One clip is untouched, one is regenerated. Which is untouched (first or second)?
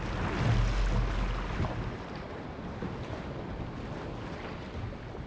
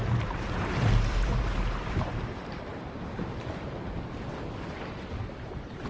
first